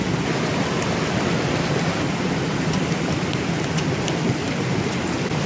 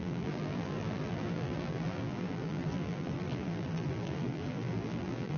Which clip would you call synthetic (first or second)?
second